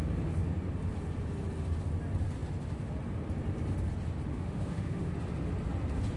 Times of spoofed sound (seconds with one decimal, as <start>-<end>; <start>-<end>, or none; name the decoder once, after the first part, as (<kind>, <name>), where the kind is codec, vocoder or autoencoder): 4.3-5.1 (autoencoder, DAC-VAE)